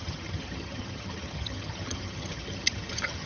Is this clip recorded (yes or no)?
no